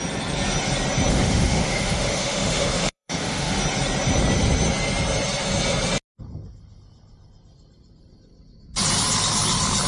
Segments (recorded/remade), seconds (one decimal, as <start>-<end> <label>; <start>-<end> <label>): 0.0-1.1 recorded; 1.1-3.6 remade; 3.6-9.9 recorded